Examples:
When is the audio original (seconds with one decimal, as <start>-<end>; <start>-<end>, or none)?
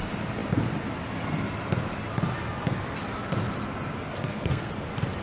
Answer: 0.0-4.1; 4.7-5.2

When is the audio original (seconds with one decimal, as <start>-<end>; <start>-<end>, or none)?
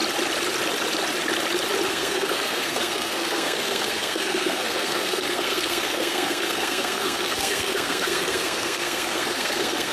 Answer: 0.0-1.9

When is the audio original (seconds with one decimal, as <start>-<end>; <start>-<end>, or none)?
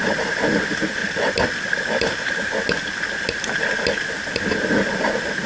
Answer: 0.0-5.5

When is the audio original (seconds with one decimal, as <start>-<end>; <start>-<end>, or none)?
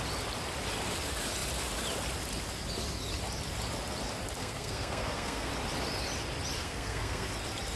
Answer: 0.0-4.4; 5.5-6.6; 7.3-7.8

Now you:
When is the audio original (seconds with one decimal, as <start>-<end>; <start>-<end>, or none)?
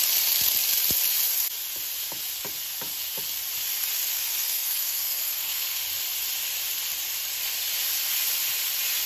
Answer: 0.0-4.1; 5.8-9.1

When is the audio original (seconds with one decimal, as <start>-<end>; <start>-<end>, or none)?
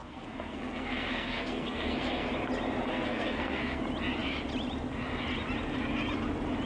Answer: 2.3-2.9; 3.8-6.7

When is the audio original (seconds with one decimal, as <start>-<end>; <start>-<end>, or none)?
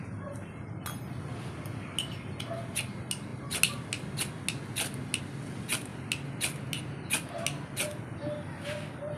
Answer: 0.0-9.2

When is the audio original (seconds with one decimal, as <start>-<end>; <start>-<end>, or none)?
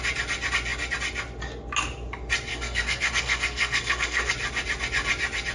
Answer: 0.0-2.5; 4.3-5.5